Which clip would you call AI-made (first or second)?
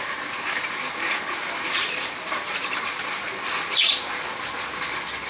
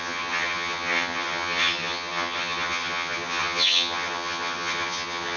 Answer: second